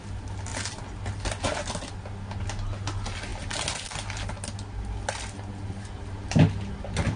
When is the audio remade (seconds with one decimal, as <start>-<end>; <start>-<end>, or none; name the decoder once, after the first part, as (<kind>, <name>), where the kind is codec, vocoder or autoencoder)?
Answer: none